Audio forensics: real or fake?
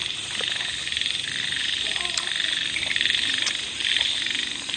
real